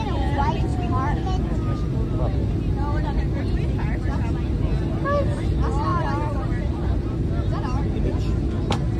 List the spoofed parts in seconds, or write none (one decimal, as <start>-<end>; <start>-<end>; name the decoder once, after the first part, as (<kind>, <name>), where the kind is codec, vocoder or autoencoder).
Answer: 0.7-1.4 (vocoder, BigVGAN v2); 5.9-7.3